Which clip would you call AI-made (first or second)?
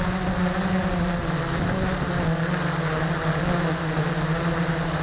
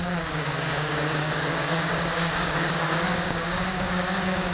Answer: second